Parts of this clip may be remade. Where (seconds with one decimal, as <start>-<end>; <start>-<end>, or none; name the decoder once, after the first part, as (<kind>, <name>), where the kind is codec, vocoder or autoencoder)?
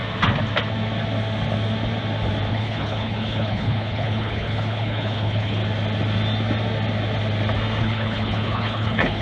2.5-5.6 (codec, HILCodec); 7.8-9.2